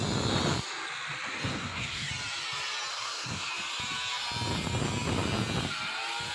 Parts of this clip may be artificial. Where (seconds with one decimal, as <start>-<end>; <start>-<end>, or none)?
1.5-2.1; 2.9-3.5